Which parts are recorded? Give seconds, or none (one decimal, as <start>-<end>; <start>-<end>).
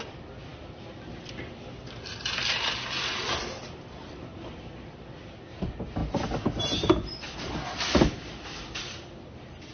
0.0-9.7